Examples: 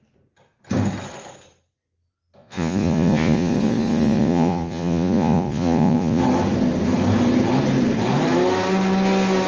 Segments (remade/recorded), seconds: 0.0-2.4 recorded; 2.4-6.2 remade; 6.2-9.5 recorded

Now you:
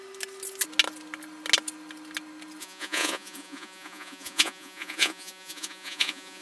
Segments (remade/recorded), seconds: 0.0-2.6 recorded; 2.6-6.4 remade

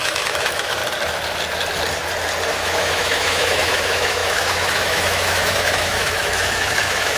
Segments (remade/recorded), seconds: 0.0-0.8 remade; 0.8-2.5 recorded; 2.5-7.2 remade

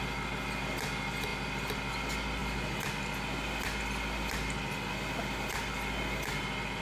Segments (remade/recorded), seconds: 0.0-6.8 recorded

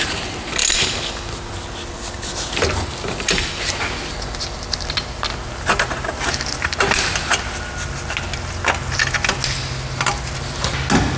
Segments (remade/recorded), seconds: 0.0-11.2 recorded

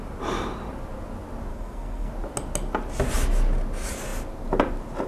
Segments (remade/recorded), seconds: 0.0-1.5 recorded; 1.5-2.1 remade; 2.1-5.1 recorded

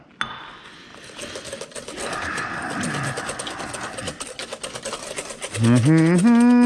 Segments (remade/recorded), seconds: 0.0-6.7 recorded

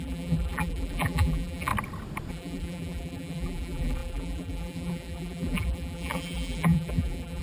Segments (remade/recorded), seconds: 0.0-1.7 remade; 1.7-2.3 recorded; 2.3-7.4 remade